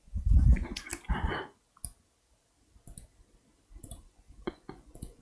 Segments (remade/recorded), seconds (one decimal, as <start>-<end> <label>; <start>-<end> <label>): 0.0-0.9 remade; 0.9-4.0 recorded; 4.0-5.2 remade